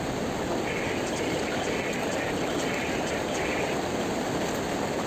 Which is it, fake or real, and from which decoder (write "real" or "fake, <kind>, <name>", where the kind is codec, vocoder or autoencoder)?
real